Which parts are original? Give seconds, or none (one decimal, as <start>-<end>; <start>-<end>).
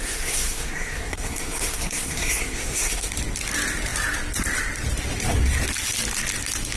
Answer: 3.1-6.8